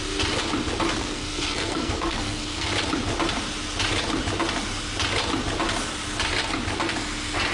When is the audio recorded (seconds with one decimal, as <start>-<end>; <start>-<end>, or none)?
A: 0.0-1.0; 2.7-7.5